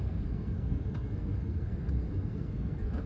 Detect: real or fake fake